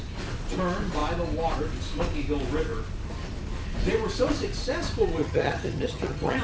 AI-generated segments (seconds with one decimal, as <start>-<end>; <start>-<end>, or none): 5.2-6.4